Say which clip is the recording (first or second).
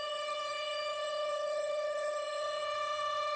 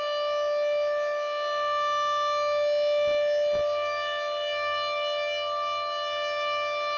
second